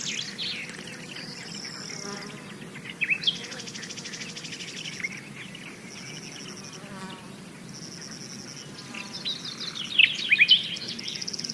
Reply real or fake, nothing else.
real